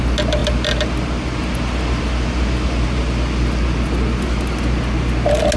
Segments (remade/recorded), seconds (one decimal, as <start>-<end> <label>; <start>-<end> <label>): 0.0-5.6 recorded